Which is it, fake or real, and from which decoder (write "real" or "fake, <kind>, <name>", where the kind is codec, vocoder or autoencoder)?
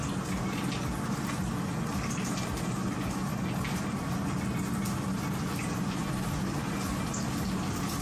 real